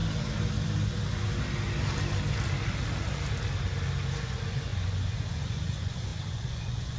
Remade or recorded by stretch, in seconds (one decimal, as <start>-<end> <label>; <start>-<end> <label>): 0.0-4.2 recorded; 4.2-7.0 remade